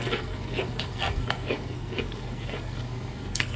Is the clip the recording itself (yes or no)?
no